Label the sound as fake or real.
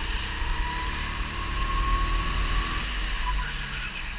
real